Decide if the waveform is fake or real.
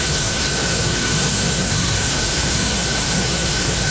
fake